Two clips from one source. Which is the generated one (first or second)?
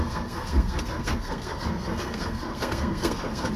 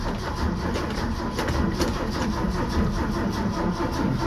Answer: first